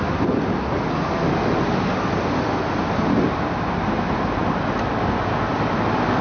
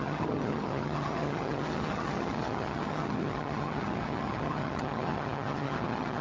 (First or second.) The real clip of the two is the first